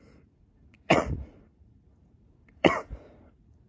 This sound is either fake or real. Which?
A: fake